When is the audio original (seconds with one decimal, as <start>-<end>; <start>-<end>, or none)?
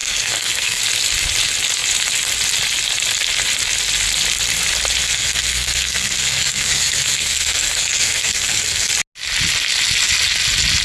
0.8-5.0; 8.9-10.8